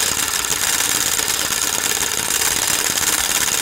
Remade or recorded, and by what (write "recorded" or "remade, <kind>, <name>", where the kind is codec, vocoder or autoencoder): recorded